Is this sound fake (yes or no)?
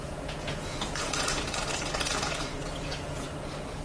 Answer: yes